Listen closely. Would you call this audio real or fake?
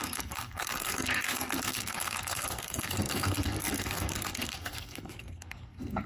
fake